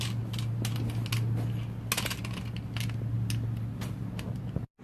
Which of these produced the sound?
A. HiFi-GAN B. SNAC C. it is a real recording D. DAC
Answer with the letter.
C